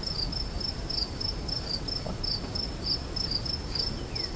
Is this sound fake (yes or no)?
no